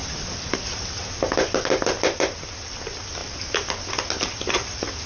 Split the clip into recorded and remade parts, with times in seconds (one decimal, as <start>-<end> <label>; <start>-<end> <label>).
0.0-5.1 recorded